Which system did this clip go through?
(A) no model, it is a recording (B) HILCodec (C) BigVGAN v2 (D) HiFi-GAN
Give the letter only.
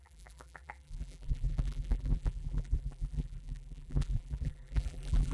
C